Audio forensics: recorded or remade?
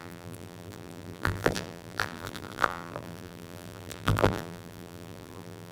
remade